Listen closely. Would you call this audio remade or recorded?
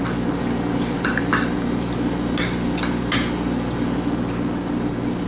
recorded